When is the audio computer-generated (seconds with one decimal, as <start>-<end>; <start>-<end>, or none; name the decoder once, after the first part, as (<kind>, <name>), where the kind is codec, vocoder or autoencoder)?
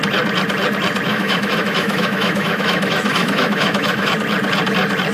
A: 1.1-4.1 (autoencoder, DAC-VAE)